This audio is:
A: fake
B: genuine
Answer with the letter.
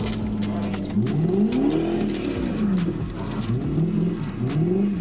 B